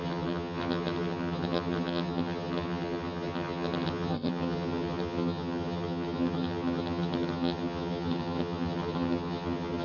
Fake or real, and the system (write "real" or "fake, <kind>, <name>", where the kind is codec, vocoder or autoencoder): fake, vocoder, HiFi-GAN